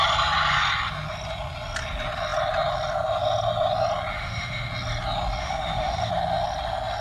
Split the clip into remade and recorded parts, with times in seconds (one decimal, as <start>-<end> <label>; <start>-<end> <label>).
0.0-4.1 recorded; 4.1-4.7 remade; 4.7-5.4 recorded; 5.4-6.1 remade; 6.1-7.0 recorded